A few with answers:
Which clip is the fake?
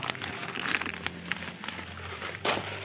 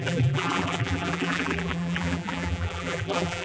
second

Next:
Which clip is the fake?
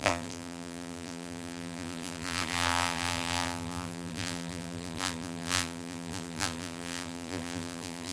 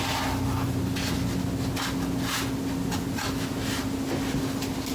first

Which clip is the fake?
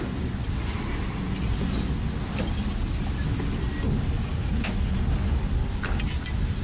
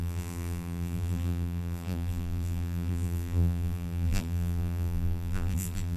second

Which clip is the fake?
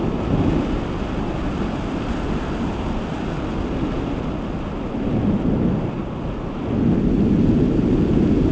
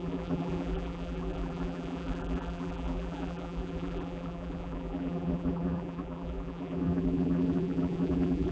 second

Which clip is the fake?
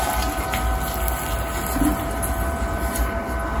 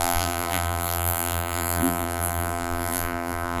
second